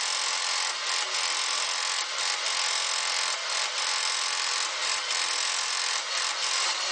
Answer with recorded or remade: recorded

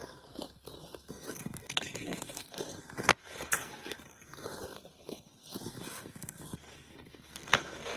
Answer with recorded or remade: remade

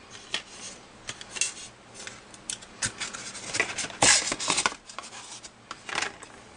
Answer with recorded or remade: recorded